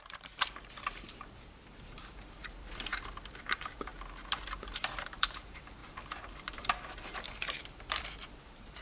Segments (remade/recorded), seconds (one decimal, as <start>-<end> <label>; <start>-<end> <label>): 0.0-2.9 remade; 2.9-3.4 recorded; 3.4-3.9 remade; 3.9-4.5 recorded; 4.5-5.8 remade; 5.8-7.0 recorded; 7.0-8.8 remade